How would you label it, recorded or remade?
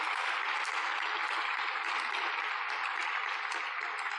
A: recorded